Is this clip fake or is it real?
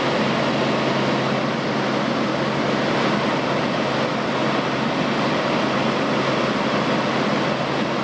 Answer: real